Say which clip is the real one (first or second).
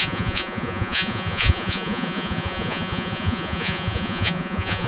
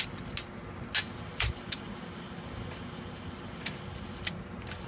second